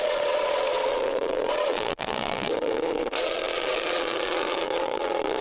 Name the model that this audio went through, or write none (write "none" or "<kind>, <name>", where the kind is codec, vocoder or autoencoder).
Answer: vocoder, Vocos